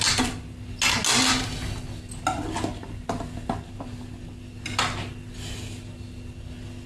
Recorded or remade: recorded